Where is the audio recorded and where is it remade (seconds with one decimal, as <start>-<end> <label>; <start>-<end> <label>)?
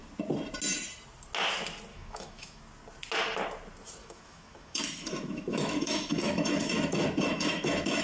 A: 0.0-1.9 recorded; 1.9-2.6 remade; 2.6-4.0 recorded; 4.0-8.0 remade